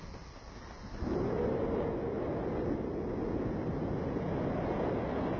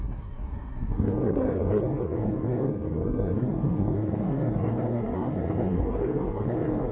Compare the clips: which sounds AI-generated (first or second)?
second